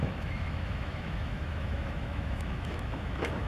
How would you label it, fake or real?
fake